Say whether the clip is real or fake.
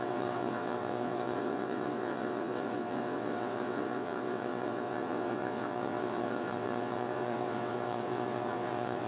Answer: fake